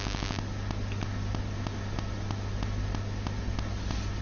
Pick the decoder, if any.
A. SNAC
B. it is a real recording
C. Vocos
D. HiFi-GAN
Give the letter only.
B